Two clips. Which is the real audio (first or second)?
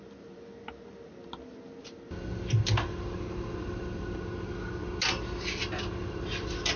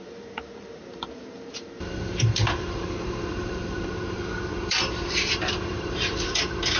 first